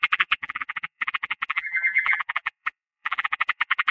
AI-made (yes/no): yes